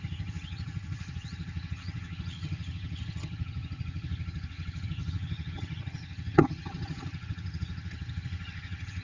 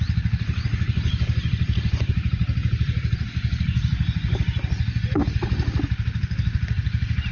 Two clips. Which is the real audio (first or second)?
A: second